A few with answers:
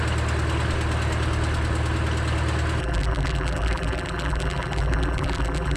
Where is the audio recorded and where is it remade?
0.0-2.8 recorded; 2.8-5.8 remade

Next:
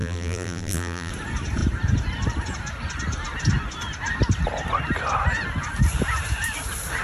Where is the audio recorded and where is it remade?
0.0-1.1 remade; 1.1-7.0 recorded

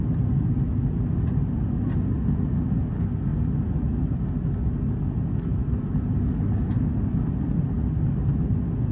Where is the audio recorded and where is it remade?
0.0-8.9 recorded

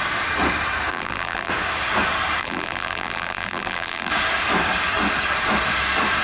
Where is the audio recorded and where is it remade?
0.0-0.9 recorded; 0.9-1.5 remade; 1.5-2.4 recorded; 2.4-4.1 remade; 4.1-6.2 recorded

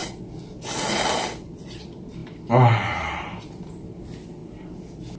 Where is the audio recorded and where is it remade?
0.0-0.9 recorded; 0.9-2.2 remade; 2.2-3.0 recorded; 3.0-4.4 remade; 4.4-5.2 recorded